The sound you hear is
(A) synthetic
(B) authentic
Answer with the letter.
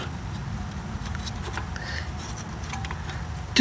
B